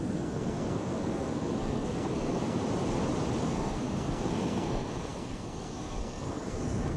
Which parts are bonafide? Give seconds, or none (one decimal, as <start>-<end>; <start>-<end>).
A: 2.6-3.4